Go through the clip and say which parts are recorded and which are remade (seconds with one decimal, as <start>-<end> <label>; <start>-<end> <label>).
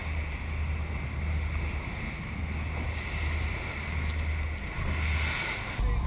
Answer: 0.0-6.1 recorded